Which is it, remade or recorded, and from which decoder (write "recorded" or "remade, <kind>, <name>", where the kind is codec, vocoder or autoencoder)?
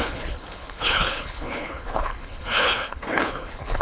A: remade, codec, HILCodec